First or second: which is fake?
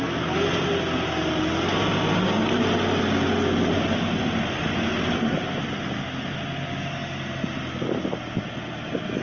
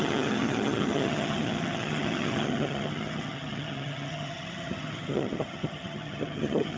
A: second